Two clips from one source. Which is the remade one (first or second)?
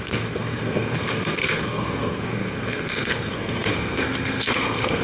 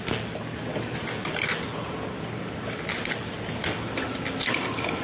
first